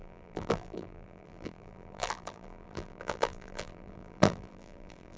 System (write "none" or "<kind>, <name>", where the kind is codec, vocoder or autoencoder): vocoder, BigVGAN v2